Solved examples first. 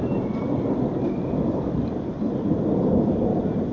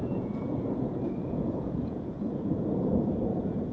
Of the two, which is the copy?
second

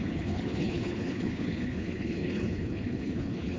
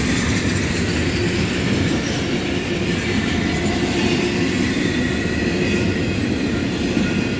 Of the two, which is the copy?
first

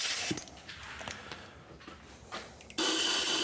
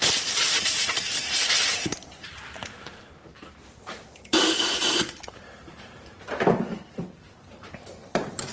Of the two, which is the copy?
second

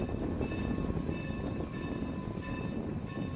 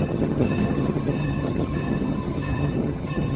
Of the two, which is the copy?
second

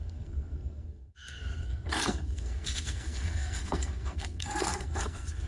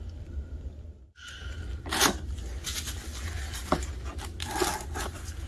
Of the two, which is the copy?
first